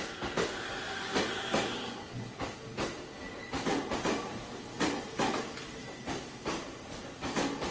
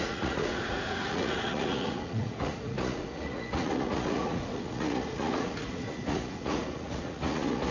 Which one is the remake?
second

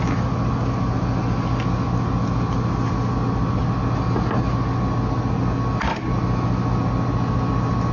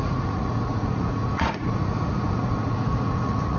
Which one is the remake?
second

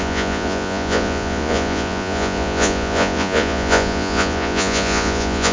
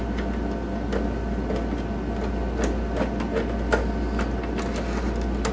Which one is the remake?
first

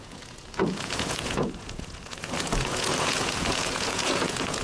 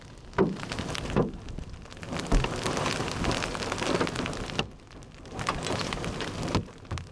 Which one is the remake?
first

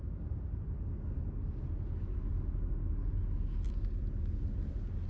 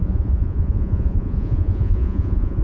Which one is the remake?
second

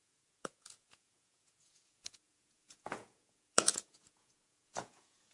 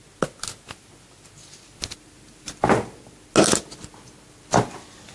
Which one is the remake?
first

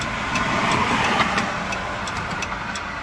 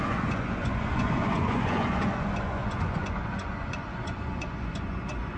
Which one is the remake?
second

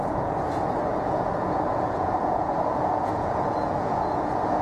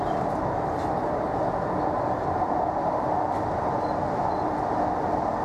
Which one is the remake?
first